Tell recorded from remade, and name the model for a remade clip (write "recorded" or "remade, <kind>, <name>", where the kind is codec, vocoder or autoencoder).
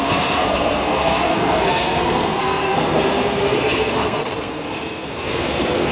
remade, codec, SNAC